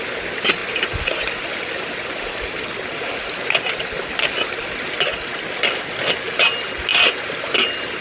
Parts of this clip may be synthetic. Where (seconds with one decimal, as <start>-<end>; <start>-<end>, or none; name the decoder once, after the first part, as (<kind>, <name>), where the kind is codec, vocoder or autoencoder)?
none